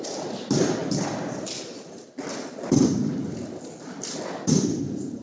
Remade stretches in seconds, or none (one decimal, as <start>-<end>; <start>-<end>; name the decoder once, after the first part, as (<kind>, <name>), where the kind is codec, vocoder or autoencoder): none

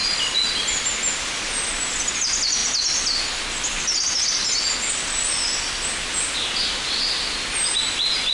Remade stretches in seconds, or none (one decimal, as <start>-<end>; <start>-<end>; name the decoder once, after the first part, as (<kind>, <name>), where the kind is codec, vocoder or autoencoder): none

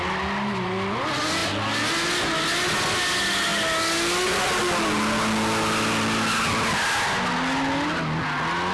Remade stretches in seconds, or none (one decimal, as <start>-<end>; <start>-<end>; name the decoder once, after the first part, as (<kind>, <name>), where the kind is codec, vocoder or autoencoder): none

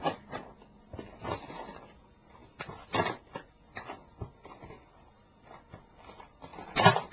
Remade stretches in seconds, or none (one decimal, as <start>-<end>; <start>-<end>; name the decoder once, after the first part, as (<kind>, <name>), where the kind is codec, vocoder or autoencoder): none

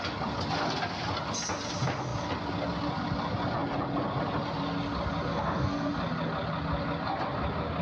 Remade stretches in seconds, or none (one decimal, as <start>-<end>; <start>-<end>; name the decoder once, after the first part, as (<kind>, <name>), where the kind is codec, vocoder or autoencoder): 5.3-5.9 (codec, SNAC)

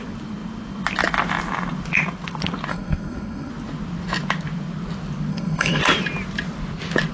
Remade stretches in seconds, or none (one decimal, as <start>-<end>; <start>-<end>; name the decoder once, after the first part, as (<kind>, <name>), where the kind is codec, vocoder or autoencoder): 2.7-3.5 (codec, SNAC); 5.3-5.8

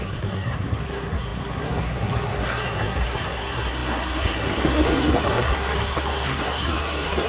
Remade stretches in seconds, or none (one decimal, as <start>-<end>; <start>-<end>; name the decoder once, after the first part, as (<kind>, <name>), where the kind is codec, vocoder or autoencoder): 0.0-7.3 (codec, SNAC)

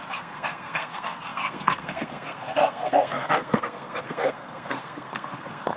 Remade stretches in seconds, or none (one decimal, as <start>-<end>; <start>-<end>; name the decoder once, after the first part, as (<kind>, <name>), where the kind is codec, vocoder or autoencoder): 0.0-5.8 (codec, SNAC)